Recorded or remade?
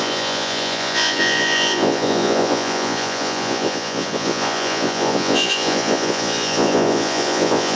remade